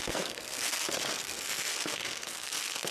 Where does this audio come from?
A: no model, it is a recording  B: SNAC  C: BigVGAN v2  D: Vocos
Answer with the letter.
B